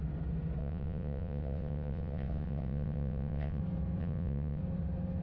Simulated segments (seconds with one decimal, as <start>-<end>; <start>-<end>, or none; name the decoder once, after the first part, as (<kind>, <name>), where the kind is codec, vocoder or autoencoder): 0.6-3.6 (vocoder, WaveNeXt); 4.0-4.6